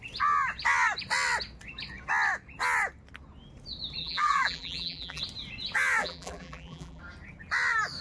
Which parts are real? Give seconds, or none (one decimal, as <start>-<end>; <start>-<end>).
0.0-4.0; 5.2-6.0; 7.0-8.0